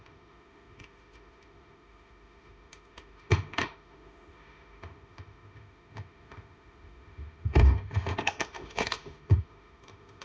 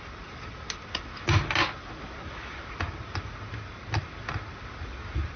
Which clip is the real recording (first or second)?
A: second